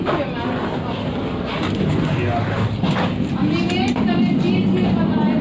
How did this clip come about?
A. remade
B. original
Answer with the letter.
B